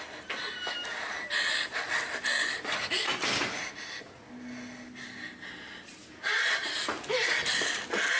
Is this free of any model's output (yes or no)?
yes